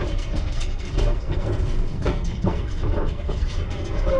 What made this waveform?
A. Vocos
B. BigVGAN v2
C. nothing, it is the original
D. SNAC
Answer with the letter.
D